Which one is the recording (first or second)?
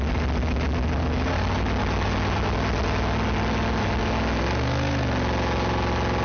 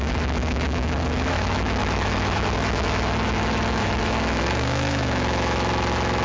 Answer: first